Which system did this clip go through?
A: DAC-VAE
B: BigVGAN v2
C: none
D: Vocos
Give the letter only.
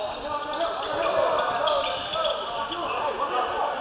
C